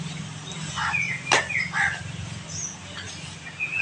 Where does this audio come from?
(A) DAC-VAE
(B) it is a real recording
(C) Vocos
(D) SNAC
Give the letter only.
B